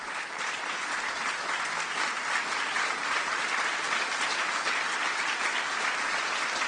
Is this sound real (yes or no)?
yes